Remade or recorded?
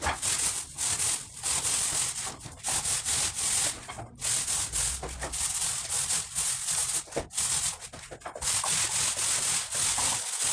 recorded